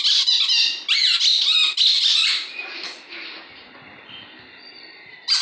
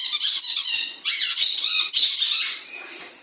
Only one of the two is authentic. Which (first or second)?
first